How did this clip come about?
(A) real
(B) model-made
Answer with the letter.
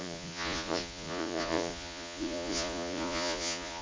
B